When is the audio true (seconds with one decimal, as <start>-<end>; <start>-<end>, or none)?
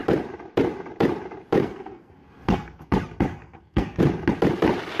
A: 0.0-1.6; 2.9-3.3; 4.0-5.0